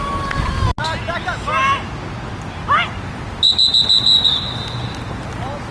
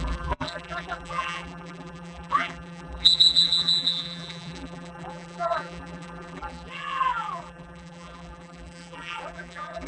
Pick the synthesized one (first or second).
second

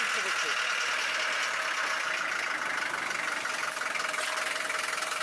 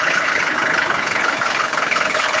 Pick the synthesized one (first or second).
second